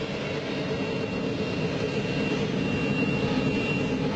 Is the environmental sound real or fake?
real